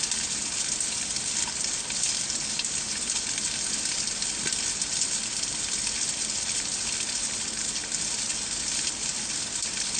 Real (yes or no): yes